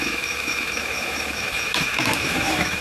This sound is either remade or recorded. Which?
remade